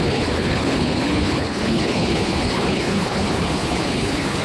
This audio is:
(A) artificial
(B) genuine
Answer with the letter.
A